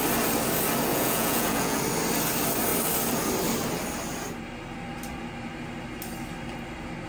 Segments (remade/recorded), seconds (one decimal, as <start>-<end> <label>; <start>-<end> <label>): 0.0-0.9 recorded; 0.9-1.8 remade; 1.8-7.1 recorded